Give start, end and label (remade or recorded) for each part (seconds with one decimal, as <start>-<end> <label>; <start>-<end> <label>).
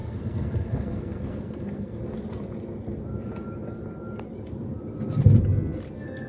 0.0-2.0 remade; 2.0-6.3 recorded